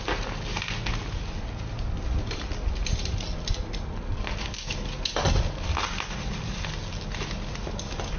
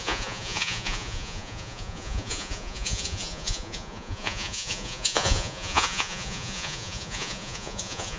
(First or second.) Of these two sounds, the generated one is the second